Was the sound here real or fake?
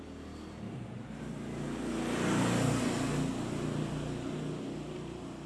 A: real